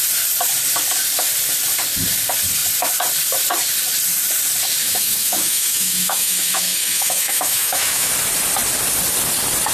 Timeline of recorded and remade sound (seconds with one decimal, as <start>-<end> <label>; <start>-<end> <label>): 0.0-4.8 recorded; 4.8-8.1 remade; 8.1-9.7 recorded